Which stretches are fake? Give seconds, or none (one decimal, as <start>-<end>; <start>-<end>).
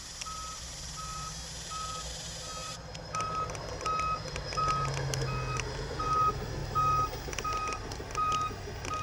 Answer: none